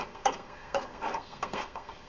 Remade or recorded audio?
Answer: remade